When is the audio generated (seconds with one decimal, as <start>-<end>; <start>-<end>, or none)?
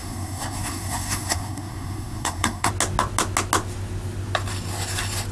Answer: 0.0-2.7